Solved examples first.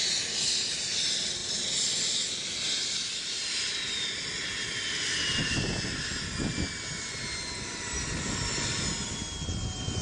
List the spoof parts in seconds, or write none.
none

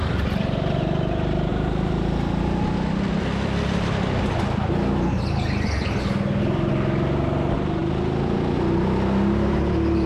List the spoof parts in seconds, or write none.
none

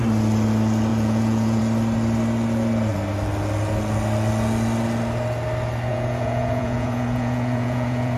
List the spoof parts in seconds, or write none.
0.9-1.6; 5.9-8.2